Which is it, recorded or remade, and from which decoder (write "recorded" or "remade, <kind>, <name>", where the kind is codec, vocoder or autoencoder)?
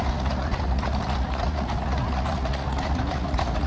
remade, vocoder, Vocos